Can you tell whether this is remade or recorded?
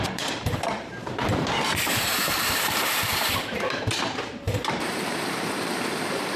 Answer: remade